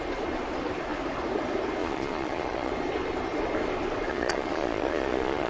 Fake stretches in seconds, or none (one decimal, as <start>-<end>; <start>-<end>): 1.8-2.7; 4.1-5.5